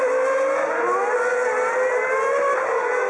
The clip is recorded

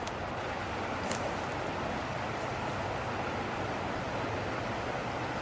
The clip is recorded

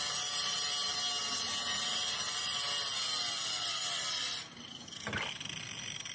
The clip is recorded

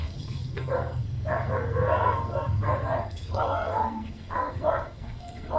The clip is remade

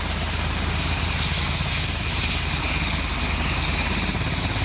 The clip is recorded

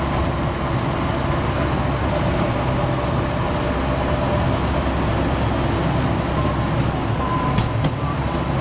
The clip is recorded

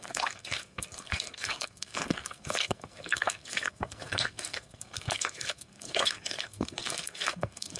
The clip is remade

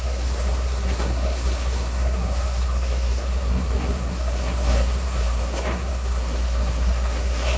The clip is remade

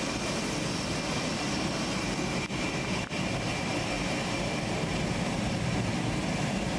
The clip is recorded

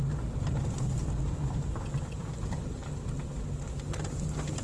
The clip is recorded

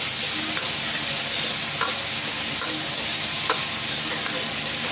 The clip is recorded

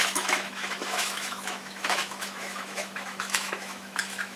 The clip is remade